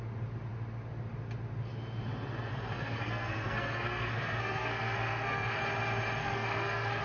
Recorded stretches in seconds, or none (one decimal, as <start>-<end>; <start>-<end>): 0.0-2.5; 5.6-6.2